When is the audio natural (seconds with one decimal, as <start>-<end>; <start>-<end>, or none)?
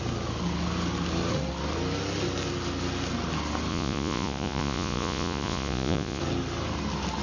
0.0-3.7; 6.2-7.2